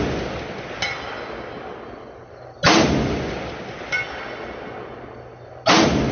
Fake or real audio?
real